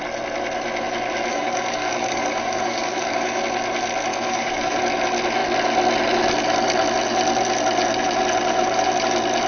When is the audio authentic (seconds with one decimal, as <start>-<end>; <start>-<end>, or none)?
0.0-1.3; 3.4-4.1; 4.8-9.5